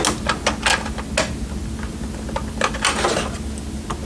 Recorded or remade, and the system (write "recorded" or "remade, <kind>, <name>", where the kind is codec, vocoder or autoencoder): recorded